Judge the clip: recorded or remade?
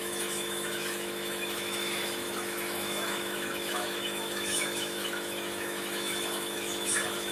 remade